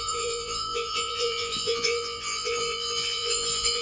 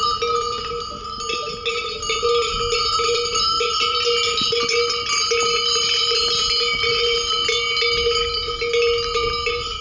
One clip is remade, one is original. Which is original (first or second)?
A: second